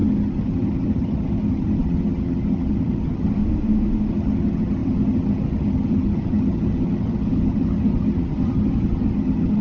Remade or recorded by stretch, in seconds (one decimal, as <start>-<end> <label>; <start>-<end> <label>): 0.0-3.4 remade; 3.4-4.1 recorded; 4.1-9.6 remade